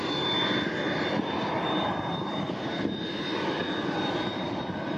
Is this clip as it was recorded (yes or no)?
yes